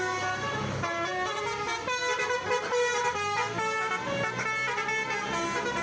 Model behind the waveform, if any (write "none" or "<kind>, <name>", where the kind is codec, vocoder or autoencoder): none